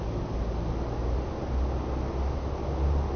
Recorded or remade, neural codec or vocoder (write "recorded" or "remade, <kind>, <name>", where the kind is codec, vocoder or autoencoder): recorded